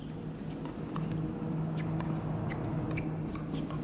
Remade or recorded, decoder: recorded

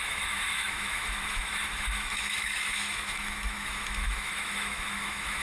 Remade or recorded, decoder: remade, autoencoder, DAC-VAE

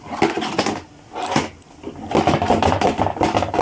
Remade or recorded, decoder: recorded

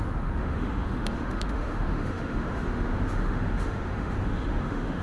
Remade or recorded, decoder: remade, autoencoder, DAC-VAE